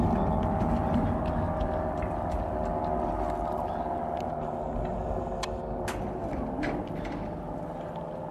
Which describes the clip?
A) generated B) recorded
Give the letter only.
B